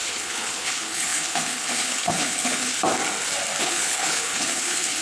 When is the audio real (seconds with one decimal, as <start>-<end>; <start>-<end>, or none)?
2.7-3.6